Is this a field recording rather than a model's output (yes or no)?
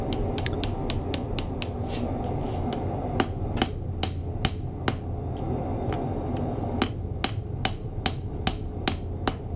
yes